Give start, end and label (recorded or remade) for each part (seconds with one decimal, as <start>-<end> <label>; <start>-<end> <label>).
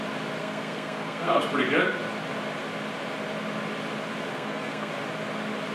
0.0-0.4 recorded; 0.4-1.4 remade; 1.4-4.3 recorded; 4.3-4.9 remade; 4.9-5.7 recorded